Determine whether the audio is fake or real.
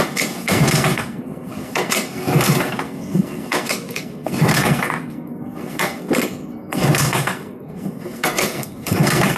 fake